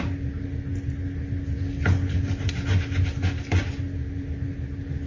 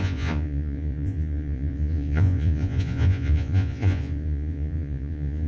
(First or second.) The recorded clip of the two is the first